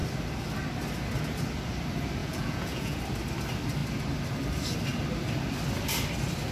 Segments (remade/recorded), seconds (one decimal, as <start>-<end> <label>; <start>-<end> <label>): 0.0-2.2 recorded; 2.2-3.0 remade; 3.0-6.5 recorded